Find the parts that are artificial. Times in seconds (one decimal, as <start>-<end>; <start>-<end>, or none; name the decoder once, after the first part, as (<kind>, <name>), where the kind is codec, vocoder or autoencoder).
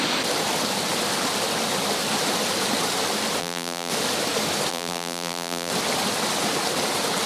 3.4-3.9 (vocoder, BigVGAN v2); 4.7-5.7